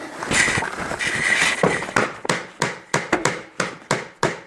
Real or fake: real